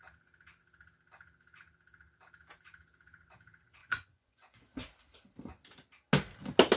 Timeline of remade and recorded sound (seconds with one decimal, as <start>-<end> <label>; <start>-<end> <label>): 0.0-3.8 recorded; 3.8-4.6 remade; 4.6-6.8 recorded